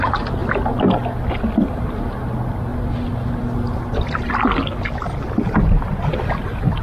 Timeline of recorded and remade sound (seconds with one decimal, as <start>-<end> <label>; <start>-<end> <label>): 0.0-0.4 recorded; 0.4-1.0 remade; 1.0-6.8 recorded